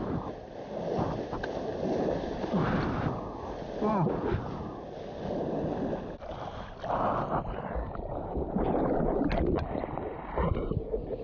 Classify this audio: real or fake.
real